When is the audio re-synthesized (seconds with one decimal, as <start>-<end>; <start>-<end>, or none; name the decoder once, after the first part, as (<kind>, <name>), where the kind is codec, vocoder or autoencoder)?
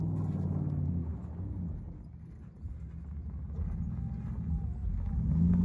none